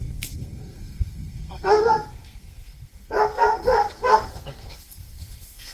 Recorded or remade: remade